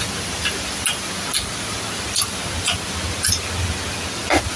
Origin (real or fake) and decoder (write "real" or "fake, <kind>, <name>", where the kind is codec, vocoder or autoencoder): real